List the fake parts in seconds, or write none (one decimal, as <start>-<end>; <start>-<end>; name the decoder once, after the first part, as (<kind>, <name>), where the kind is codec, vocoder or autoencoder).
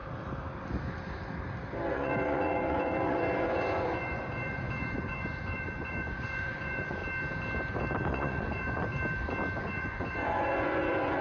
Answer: 1.9-7.0 (vocoder, Vocos); 8.1-8.9; 9.6-11.2